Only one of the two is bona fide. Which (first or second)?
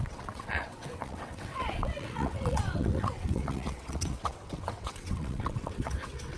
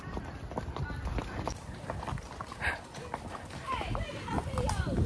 second